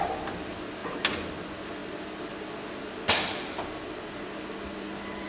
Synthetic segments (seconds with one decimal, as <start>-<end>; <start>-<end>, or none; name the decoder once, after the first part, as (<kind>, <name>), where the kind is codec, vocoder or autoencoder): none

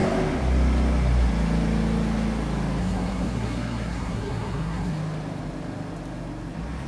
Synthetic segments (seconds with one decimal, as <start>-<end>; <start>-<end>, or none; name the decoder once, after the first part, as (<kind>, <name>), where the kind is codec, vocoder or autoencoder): 2.8-5.0 (codec, SNAC)

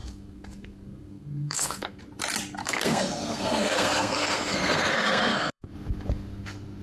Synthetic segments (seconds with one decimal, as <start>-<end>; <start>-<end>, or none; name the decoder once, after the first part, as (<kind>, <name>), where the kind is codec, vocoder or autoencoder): 0.0-2.0 (codec, SNAC); 2.6-6.8

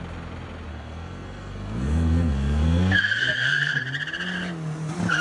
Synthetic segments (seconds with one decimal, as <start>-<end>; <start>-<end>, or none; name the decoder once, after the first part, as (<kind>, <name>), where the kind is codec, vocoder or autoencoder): 0.7-3.8 (codec, SNAC)

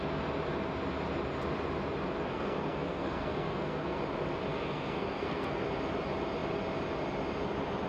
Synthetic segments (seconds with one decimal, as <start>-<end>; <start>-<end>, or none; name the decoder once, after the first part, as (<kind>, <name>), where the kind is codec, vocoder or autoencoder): 2.3-4.0 (codec, SNAC); 4.5-5.6

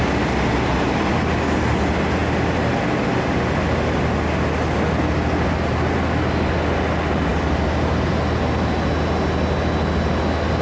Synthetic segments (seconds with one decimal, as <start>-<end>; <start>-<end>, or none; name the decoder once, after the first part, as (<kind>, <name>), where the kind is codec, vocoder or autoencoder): none

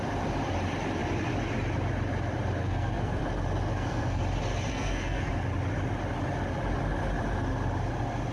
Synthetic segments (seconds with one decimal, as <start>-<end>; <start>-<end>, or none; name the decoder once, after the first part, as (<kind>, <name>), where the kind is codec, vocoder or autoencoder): 2.6-3.2 (codec, SNAC); 3.7-4.2; 4.7-5.3

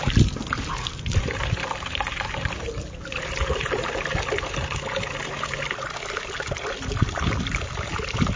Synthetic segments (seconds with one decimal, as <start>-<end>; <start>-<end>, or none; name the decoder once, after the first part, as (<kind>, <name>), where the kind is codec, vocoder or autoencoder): none